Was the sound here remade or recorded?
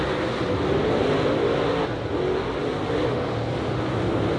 recorded